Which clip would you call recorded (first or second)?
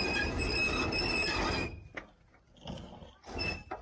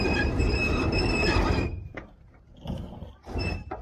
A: first